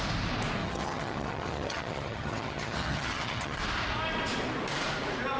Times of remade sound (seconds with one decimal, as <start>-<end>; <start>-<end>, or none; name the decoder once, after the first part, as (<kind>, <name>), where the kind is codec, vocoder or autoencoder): 0.6-3.6 (vocoder, HiFi-GAN)